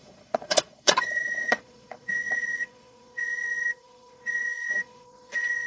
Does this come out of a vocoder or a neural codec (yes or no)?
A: yes